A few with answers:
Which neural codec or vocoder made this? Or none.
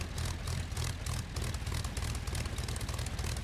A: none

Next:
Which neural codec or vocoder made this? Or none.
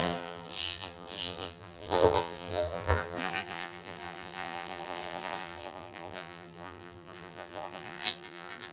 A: vocoder, BigVGAN v2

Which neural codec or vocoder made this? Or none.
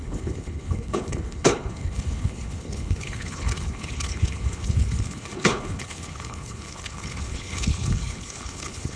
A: codec, HILCodec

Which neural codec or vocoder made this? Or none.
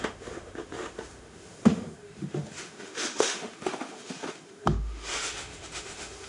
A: autoencoder, DAC-VAE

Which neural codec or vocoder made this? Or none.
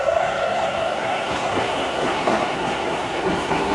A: codec, SNAC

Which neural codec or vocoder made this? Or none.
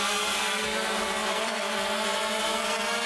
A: codec, SNAC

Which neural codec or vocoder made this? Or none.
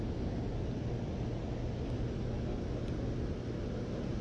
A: none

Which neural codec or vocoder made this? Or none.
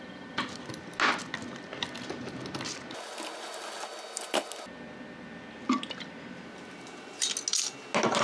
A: none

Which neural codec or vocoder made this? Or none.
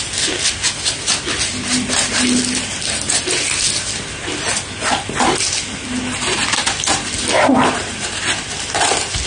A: none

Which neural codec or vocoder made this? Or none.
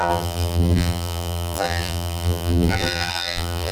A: vocoder, BigVGAN v2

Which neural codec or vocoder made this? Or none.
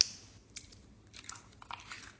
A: none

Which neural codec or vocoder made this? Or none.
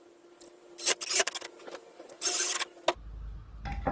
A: none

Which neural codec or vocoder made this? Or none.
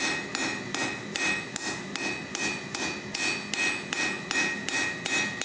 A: none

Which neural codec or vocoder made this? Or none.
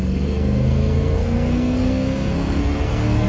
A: codec, SNAC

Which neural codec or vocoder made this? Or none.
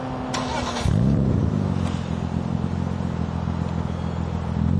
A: none